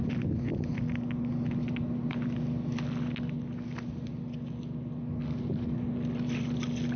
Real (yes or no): yes